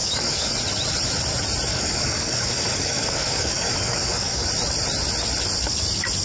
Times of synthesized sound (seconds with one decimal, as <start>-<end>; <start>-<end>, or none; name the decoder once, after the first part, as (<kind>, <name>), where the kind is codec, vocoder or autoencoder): 0.0-0.5 (codec, DAC); 1.7-4.5